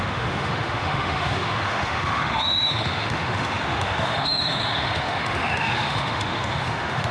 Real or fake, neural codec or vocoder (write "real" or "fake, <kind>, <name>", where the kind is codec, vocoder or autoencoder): fake, autoencoder, DAC-VAE